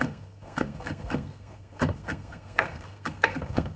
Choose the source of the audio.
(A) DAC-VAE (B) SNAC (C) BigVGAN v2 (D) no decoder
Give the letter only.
B